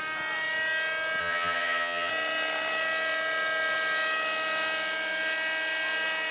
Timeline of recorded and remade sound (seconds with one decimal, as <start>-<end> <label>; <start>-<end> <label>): 0.0-1.2 recorded; 1.2-2.1 remade; 2.1-6.3 recorded